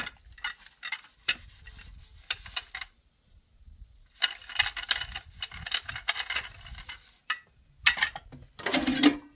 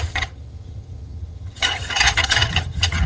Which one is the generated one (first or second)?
second